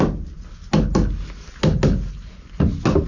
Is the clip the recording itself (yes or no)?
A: yes